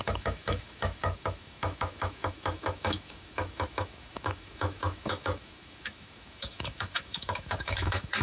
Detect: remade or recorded remade